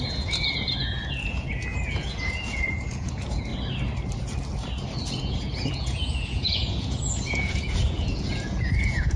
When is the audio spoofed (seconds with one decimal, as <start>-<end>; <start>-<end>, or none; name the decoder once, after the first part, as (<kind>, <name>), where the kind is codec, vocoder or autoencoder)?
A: 0.0-3.5 (vocoder, Vocos); 5.2-9.2

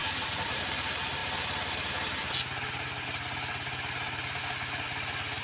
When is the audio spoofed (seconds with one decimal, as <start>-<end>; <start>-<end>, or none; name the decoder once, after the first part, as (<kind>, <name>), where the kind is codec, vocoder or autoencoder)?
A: 0.0-0.6 (vocoder, Vocos)

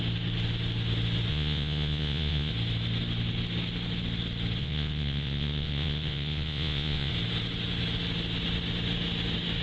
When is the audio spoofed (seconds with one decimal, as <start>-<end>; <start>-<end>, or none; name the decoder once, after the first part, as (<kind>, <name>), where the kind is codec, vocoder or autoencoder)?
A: 1.3-2.5 (vocoder, Vocos); 4.6-7.1

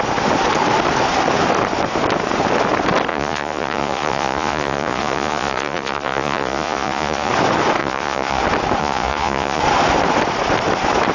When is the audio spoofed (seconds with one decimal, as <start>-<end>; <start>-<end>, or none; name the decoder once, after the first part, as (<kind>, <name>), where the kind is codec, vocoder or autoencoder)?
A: 3.1-7.3 (vocoder, Vocos); 7.8-8.4; 8.8-9.6

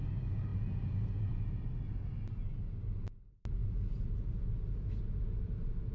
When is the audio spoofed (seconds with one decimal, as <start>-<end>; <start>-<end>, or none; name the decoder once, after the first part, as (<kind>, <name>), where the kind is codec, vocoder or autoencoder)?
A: 0.5-1.6 (vocoder, Vocos)